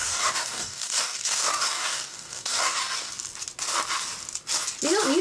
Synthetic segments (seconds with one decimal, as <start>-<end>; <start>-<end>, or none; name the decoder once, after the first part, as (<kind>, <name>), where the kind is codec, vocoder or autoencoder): 0.0-3.1 (codec, DAC)